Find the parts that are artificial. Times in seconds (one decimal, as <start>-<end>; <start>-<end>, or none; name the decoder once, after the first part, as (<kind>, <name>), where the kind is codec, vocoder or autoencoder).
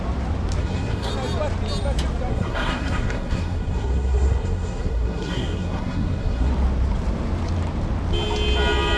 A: 0.6-1.1 (codec, SNAC); 2.3-6.5